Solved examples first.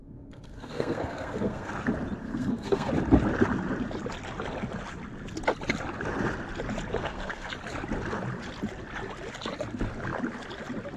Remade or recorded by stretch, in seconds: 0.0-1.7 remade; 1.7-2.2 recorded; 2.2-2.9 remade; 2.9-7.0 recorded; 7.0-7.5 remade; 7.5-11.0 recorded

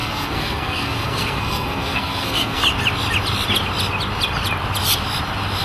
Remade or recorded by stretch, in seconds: 0.0-2.6 remade; 2.6-5.6 recorded